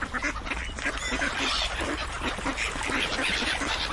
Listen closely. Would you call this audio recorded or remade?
recorded